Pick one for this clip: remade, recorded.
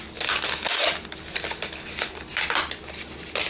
recorded